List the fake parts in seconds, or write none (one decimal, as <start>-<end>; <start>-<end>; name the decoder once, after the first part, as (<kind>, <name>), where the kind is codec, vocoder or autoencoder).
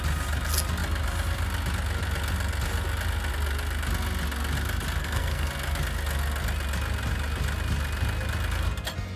5.0-5.5 (codec, SNAC)